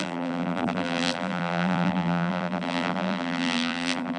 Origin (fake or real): fake